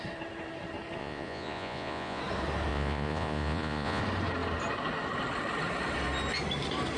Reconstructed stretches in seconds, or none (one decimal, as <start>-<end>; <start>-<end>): 1.0-2.2; 2.7-4.0